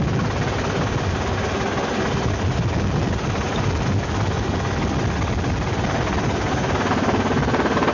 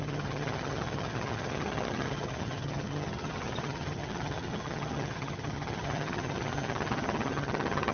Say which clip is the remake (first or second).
second